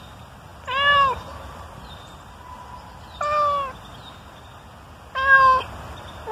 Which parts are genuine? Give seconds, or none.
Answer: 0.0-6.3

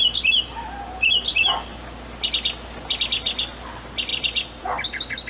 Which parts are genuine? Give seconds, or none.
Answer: 0.0-4.1; 4.6-5.3

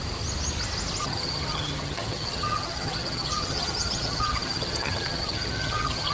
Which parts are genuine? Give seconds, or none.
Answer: 0.0-1.0